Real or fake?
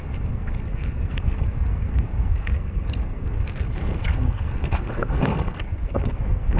fake